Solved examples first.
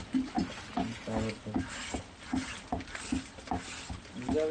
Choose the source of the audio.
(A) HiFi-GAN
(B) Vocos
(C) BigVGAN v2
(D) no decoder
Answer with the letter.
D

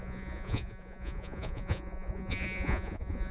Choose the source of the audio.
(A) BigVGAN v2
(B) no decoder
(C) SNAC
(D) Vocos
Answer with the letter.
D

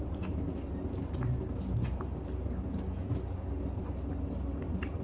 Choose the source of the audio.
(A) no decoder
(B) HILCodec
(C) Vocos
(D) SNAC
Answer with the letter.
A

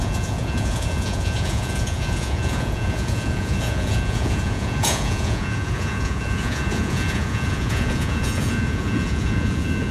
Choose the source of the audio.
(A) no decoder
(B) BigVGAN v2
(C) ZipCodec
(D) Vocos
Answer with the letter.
D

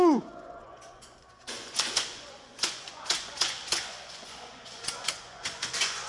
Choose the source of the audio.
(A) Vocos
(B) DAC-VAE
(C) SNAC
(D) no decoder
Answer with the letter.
A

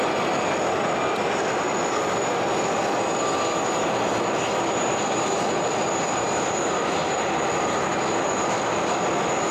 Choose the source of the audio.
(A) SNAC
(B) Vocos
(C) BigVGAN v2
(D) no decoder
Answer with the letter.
D